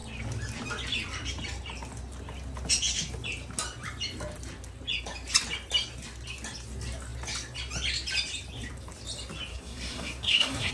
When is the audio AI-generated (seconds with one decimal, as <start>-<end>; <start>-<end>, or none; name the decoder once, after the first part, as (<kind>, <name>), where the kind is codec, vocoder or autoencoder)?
9.5-10.7 (codec, SNAC)